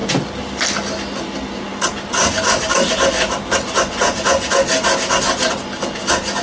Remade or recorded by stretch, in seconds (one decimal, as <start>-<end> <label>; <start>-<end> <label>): 0.0-6.4 recorded